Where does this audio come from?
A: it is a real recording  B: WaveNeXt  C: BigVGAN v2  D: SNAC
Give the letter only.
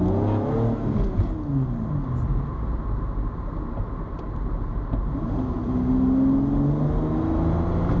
A